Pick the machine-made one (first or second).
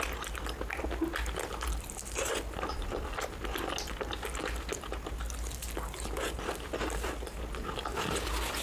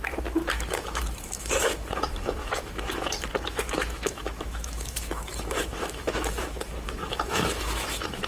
second